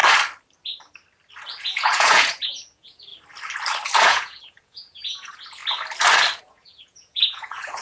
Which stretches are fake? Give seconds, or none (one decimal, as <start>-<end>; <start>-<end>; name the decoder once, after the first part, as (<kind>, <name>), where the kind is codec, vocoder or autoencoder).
1.6-3.1 (vocoder, Vocos); 4.0-5.6; 6.4-7.8